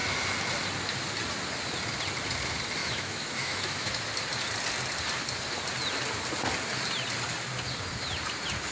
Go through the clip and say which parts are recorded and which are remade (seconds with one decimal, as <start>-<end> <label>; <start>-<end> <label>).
0.0-2.8 recorded; 2.8-4.0 remade; 4.0-8.7 recorded